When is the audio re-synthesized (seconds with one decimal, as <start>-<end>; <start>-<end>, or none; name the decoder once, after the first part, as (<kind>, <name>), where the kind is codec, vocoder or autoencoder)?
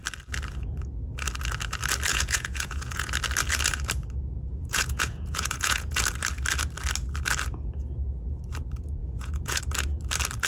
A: 2.1-3.1 (vocoder, Vocos); 4.5-6.0; 9.0-9.6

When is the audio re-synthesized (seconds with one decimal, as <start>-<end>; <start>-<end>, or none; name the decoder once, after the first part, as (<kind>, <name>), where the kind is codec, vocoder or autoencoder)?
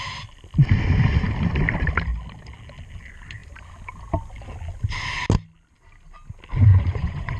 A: 6.7-7.4 (vocoder, Vocos)